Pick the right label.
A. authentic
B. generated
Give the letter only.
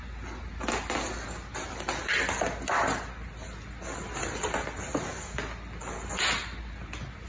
A